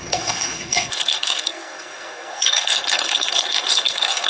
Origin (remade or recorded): remade